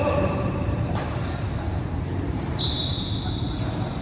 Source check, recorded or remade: remade